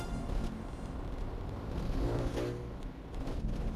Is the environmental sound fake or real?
real